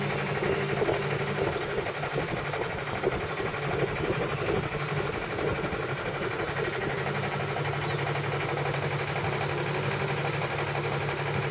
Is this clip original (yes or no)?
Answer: yes